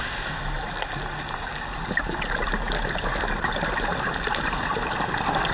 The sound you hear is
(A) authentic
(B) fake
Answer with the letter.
A